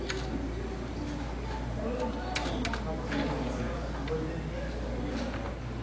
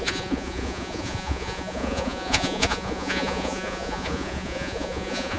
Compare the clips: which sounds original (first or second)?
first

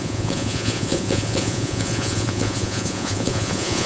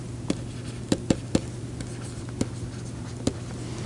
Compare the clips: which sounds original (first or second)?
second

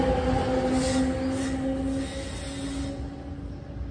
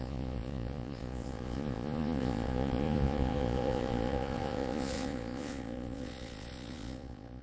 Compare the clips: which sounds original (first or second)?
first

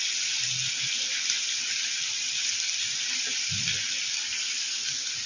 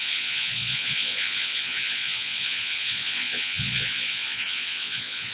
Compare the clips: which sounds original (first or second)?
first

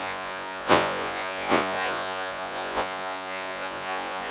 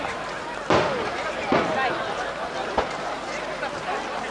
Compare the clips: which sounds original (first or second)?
second